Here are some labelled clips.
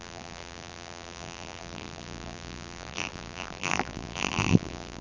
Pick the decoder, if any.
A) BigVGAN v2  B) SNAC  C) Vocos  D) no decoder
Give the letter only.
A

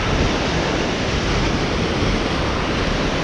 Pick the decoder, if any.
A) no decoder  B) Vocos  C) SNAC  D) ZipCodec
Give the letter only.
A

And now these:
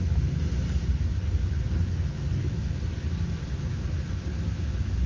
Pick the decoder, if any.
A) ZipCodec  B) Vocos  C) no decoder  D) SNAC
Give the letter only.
C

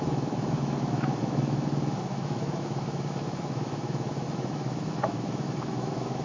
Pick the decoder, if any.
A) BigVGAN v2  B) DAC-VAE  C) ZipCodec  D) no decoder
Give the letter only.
B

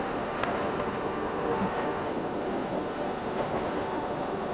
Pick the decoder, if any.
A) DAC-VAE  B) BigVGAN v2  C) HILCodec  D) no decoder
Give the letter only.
A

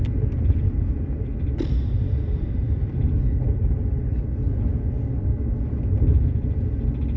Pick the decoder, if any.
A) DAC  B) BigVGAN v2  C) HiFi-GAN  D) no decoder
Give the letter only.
D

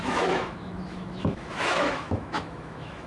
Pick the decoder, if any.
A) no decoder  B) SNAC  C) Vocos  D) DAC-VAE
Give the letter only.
D